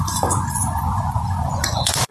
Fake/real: fake